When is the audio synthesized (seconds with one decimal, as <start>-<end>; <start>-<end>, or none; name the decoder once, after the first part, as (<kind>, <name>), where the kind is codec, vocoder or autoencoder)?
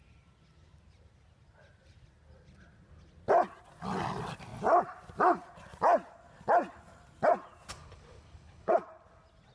7.7-8.7 (codec, HILCodec)